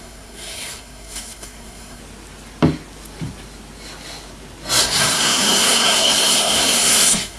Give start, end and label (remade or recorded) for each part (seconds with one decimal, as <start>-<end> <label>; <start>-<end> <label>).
0.0-2.0 remade; 2.0-4.8 recorded; 4.8-7.4 remade